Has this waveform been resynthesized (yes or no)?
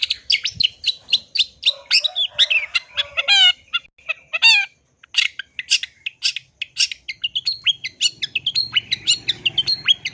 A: no